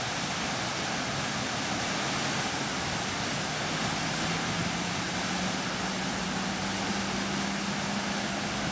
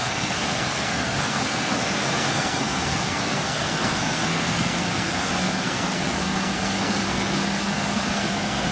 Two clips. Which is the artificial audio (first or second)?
second